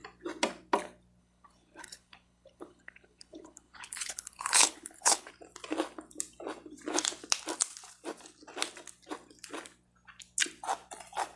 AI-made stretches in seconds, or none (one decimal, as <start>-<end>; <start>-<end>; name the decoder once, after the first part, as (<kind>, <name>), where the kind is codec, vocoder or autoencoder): 1.2-5.3 (codec, HILCodec)